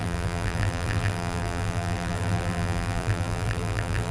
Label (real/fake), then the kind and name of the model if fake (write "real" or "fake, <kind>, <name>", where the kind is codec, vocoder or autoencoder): fake, vocoder, BigVGAN v2